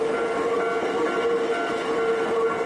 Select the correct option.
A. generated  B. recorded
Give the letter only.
B